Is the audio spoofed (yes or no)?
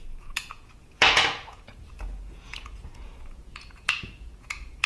yes